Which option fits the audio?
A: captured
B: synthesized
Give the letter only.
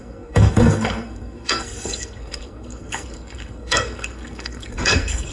B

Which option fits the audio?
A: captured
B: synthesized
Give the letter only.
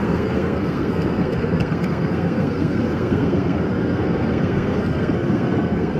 B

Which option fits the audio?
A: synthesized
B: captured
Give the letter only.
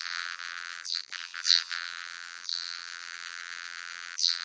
A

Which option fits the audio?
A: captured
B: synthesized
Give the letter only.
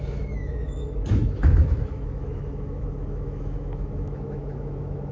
B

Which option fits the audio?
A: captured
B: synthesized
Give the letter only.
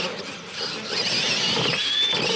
A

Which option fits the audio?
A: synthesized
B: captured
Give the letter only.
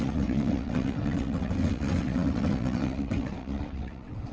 A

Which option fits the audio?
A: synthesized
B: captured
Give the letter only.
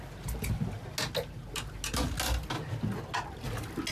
B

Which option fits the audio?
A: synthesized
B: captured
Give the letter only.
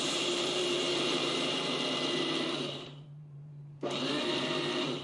A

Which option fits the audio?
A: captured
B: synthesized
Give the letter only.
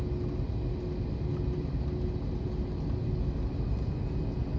A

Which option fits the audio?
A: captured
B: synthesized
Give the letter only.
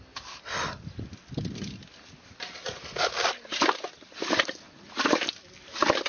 A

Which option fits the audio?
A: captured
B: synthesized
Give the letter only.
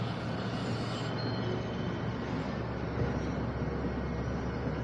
A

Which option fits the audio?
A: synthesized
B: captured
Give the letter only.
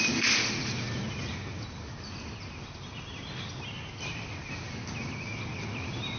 B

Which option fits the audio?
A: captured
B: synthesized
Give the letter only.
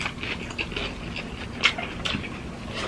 A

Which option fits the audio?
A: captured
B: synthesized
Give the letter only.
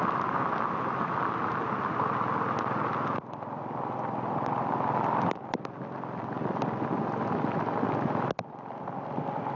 A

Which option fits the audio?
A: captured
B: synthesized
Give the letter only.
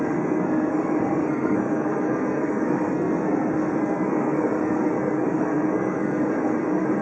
B